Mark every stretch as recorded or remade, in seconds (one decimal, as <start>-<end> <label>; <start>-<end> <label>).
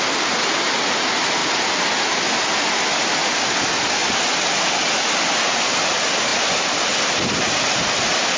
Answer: 0.0-8.4 recorded